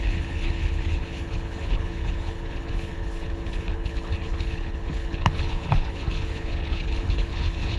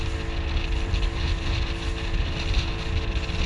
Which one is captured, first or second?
second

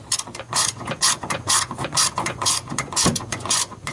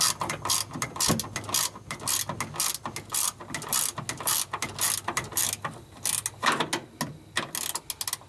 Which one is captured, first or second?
second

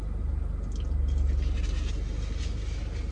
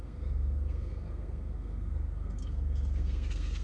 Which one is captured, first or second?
first